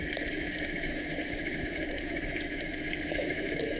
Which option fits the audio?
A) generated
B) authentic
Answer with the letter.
A